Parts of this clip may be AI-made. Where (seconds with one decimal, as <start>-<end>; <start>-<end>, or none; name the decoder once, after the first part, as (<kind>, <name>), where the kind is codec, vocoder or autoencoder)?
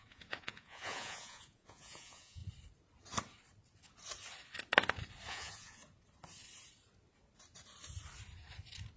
0.0-2.4 (vocoder, Vocos); 5.3-5.8